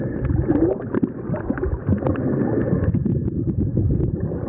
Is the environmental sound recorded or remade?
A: recorded